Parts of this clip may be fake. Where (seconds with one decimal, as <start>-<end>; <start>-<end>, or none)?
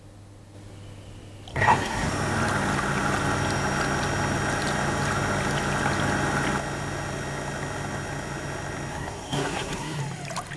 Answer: 1.5-2.1; 8.9-10.0